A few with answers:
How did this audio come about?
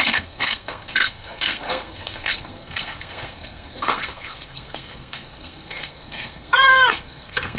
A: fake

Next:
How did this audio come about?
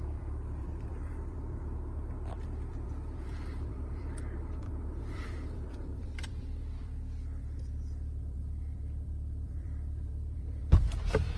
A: fake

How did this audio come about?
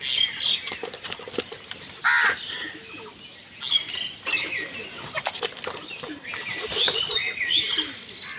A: real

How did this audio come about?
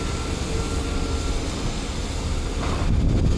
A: real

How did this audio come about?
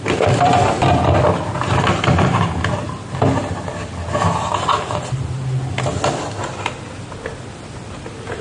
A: real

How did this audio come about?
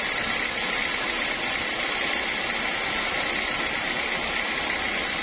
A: real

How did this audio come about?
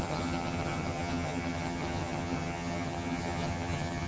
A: fake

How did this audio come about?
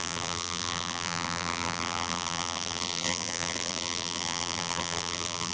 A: fake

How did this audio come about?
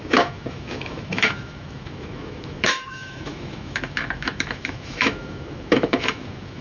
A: fake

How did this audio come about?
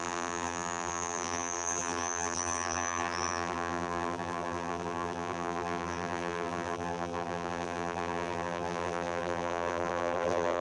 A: fake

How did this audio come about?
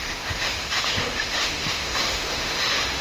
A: fake